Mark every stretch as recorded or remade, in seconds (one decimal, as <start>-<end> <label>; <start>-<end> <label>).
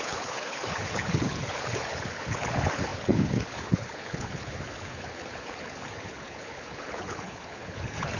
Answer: 0.0-8.2 remade